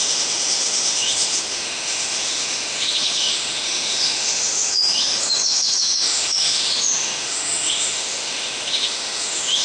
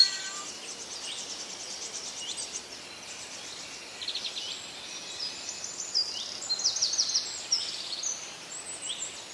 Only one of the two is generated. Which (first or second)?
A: first